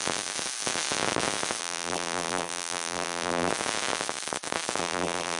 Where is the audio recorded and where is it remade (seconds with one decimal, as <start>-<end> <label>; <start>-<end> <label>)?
0.0-1.6 recorded; 1.6-3.5 remade; 3.5-4.8 recorded; 4.8-5.4 remade